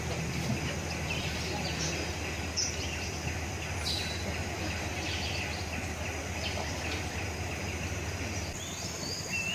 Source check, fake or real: real